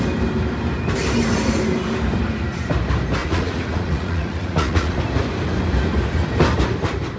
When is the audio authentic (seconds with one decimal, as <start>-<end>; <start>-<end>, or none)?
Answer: 0.0-3.2; 5.0-7.2